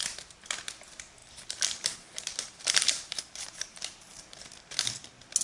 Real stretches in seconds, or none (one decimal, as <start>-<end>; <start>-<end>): 0.0-1.2; 4.4-5.4

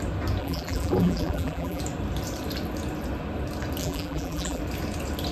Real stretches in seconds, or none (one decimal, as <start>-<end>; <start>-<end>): 0.0-0.4; 1.8-3.8; 4.6-5.3

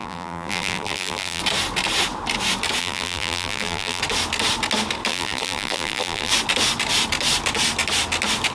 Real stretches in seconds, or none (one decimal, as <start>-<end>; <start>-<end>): 1.4-2.8; 4.0-5.1; 6.3-8.5